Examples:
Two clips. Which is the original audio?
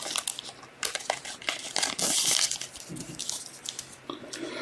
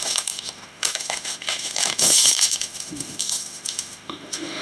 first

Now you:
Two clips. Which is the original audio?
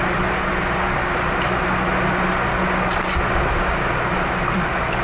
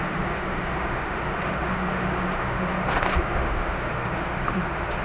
first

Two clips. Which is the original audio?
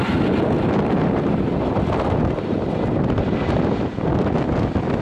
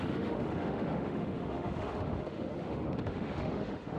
first